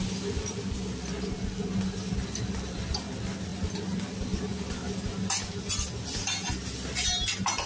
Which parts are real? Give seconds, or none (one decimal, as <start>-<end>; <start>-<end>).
0.0-7.7